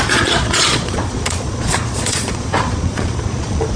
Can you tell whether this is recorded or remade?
remade